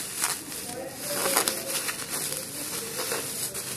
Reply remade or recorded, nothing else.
recorded